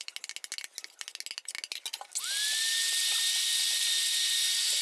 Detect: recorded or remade recorded